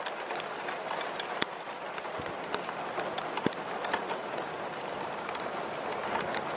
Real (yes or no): yes